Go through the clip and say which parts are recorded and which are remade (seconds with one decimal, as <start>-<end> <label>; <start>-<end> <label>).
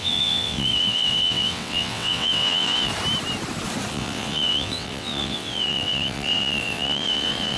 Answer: 0.0-2.9 remade; 2.9-3.9 recorded; 3.9-7.6 remade